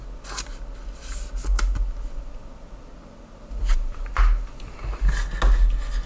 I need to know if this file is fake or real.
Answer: real